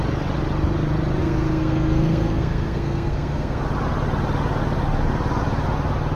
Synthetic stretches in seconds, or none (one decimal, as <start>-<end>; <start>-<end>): 1.2-3.6